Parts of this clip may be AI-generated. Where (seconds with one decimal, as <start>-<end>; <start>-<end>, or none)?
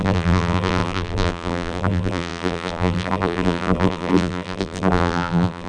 0.0-5.7